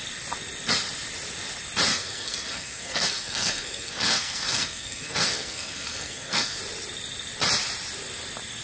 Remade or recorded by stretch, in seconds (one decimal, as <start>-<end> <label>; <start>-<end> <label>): 0.0-1.9 recorded; 1.9-6.6 remade; 6.6-8.6 recorded